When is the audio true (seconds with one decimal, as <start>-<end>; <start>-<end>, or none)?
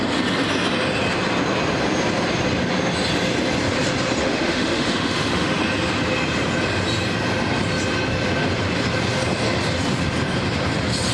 0.0-4.2; 5.6-11.1